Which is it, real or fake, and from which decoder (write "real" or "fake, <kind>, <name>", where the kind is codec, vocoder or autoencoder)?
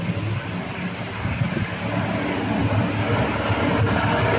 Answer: real